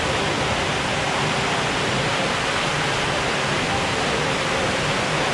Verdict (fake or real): real